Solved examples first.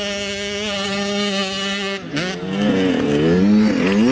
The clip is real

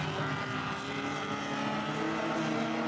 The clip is real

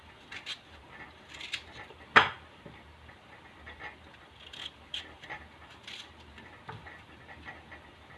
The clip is real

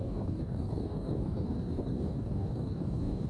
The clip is fake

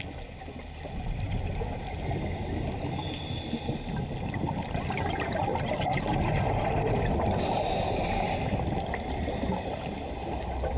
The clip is real